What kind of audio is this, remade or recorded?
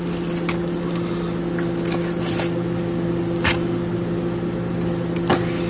recorded